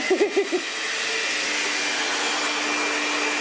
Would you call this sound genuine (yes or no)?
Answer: yes